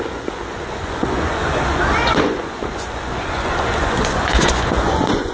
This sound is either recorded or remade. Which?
remade